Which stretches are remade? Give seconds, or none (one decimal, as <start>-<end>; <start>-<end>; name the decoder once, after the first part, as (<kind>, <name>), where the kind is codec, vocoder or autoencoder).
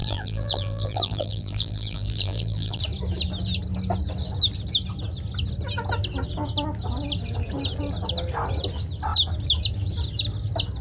0.0-2.8 (vocoder, BigVGAN v2)